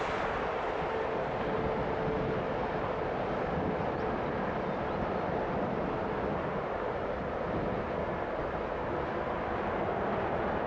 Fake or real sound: real